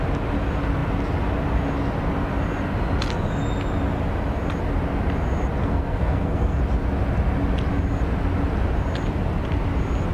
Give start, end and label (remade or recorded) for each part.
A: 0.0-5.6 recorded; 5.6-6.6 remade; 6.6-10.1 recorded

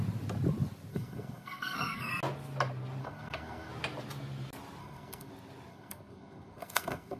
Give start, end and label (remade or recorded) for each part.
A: 0.0-0.9 recorded; 0.9-2.1 remade; 2.1-3.0 recorded; 3.0-3.7 remade; 3.7-4.8 recorded; 4.8-5.3 remade; 5.3-5.7 recorded; 5.7-7.2 remade

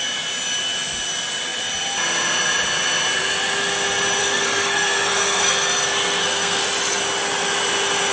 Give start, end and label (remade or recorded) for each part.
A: 0.0-4.2 recorded; 4.2-6.6 remade; 6.6-8.1 recorded

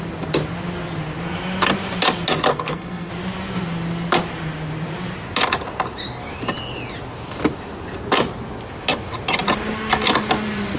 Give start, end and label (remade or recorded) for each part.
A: 0.0-2.5 recorded; 2.5-3.1 remade; 3.1-10.8 recorded